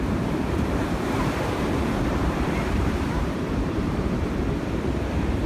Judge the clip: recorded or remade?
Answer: remade